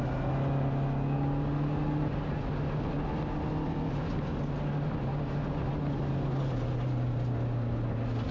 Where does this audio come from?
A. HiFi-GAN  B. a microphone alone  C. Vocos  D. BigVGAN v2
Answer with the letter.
B